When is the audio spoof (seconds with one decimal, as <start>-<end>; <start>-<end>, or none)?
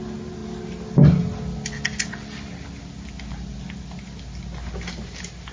none